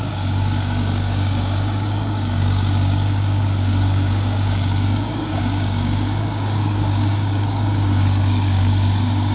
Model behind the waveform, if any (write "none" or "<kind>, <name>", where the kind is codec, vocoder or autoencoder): codec, DAC